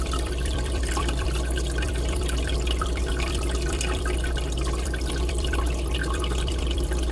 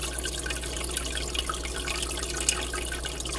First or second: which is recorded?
second